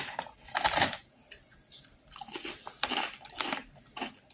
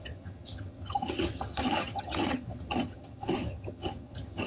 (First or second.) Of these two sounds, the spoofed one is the second